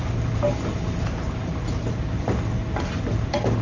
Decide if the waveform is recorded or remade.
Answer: recorded